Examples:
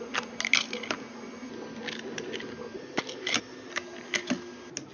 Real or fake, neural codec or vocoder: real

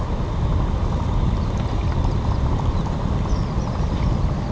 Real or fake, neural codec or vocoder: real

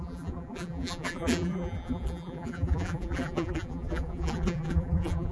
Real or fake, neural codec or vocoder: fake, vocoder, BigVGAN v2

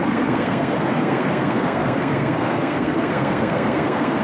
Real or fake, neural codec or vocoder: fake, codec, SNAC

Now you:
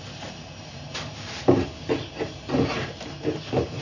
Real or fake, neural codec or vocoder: real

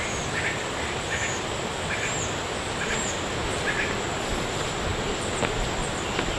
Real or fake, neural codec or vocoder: real